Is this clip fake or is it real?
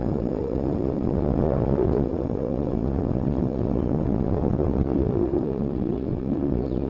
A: fake